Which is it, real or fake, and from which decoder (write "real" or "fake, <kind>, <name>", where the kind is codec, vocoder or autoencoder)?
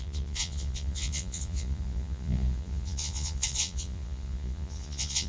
fake, vocoder, Vocos